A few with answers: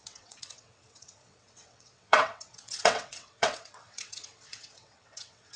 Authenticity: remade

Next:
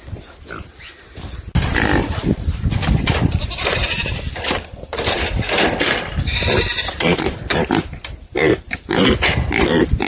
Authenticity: remade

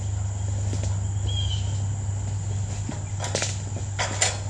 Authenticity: recorded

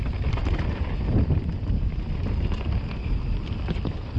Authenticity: recorded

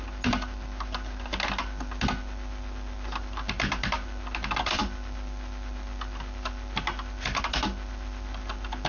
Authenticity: recorded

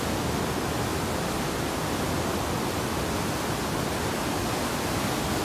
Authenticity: recorded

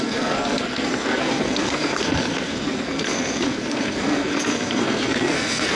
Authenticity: remade